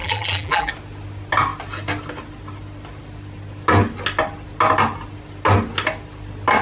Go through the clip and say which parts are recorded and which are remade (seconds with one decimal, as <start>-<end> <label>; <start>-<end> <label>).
0.0-0.7 remade; 0.7-6.6 recorded